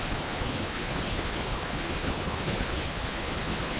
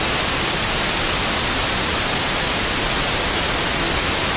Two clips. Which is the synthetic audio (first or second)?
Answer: first